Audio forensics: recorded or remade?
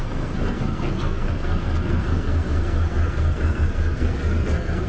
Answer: remade